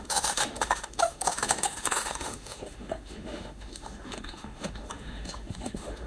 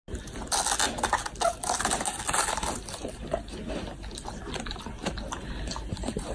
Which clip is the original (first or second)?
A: second